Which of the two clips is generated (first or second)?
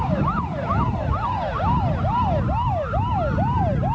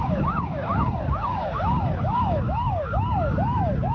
second